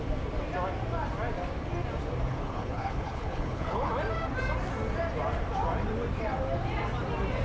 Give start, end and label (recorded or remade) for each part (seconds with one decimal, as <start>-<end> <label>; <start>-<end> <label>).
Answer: 0.0-2.3 recorded; 2.3-3.9 remade; 3.9-7.4 recorded